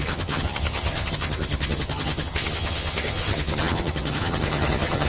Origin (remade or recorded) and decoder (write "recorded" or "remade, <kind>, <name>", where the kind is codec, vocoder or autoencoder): remade, vocoder, HiFi-GAN